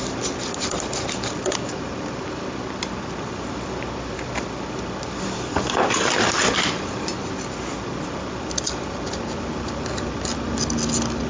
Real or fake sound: real